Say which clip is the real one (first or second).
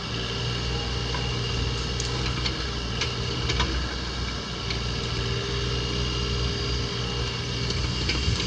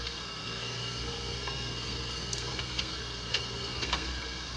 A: first